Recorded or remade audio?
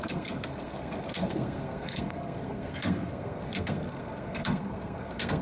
remade